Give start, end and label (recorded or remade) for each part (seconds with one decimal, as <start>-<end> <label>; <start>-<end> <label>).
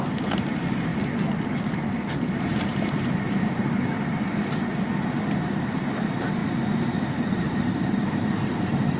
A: 0.0-0.9 remade; 0.9-1.7 recorded; 1.7-4.7 remade; 4.7-5.6 recorded; 5.6-6.4 remade; 6.4-7.7 recorded; 7.7-9.0 remade